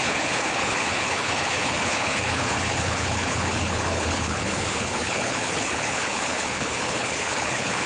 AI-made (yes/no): yes